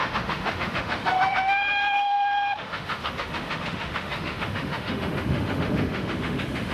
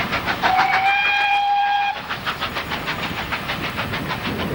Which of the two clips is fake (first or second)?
first